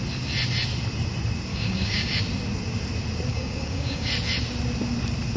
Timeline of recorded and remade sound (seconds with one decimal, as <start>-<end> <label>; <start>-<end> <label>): 0.0-1.5 recorded; 1.5-2.2 remade; 2.2-3.3 recorded; 3.3-4.1 remade; 4.1-5.4 recorded